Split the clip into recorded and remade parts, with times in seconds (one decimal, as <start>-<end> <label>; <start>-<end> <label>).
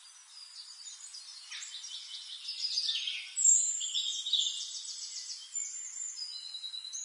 0.0-7.0 recorded